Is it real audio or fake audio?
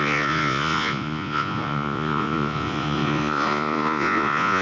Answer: fake